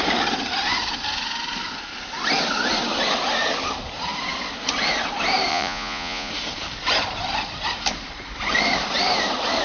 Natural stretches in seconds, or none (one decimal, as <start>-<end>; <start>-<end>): 0.0-5.5; 6.3-9.6